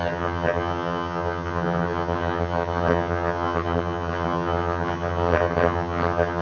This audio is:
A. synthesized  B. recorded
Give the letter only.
A